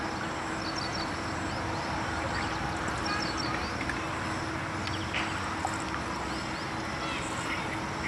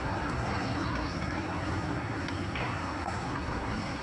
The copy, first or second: second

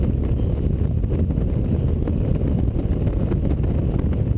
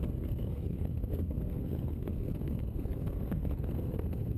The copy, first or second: second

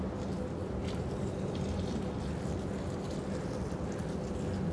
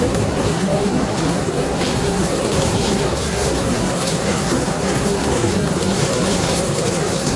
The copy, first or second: second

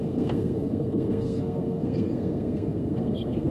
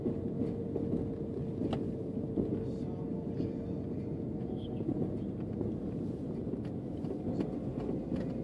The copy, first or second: first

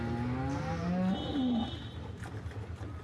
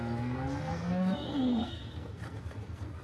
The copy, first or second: second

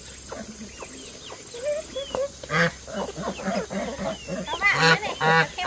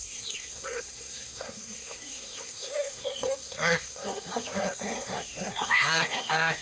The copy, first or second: second